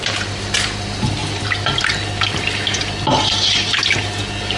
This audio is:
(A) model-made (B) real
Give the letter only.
B